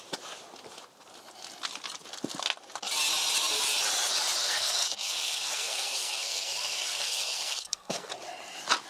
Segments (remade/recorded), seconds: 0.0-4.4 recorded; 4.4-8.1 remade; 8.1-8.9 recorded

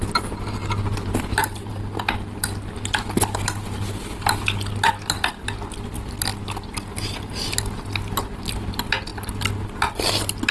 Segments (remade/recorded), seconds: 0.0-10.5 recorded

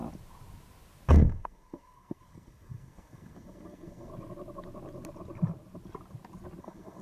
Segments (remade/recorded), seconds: 0.0-1.1 recorded; 1.1-4.1 remade; 4.1-6.6 recorded; 6.6-7.0 remade